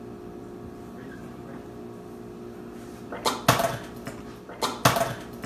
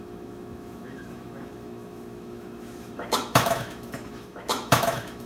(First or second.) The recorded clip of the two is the first